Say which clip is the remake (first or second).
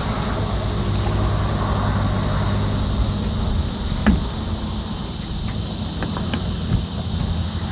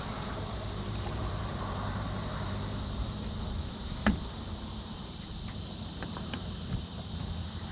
second